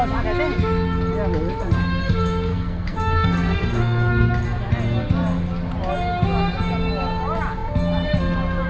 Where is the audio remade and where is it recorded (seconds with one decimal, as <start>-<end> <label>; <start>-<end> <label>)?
0.0-2.5 recorded; 2.5-4.3 remade; 4.3-8.7 recorded